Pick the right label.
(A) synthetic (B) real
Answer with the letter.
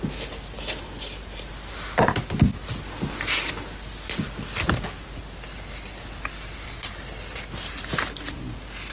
B